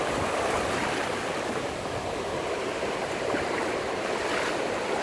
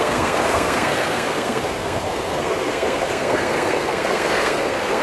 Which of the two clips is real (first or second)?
first